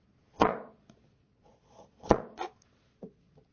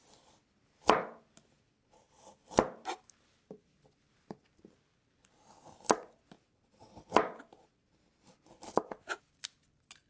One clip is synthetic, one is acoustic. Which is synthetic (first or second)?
first